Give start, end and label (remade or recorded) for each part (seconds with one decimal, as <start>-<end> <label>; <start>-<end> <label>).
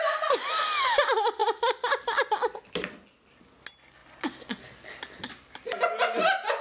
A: 0.0-6.6 recorded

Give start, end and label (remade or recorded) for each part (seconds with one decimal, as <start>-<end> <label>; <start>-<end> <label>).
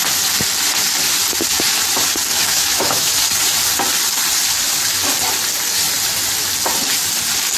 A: 0.0-2.3 recorded; 2.3-3.1 remade; 3.1-7.6 recorded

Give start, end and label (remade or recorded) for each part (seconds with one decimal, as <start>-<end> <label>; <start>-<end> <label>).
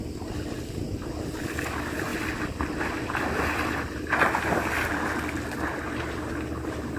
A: 0.0-7.0 recorded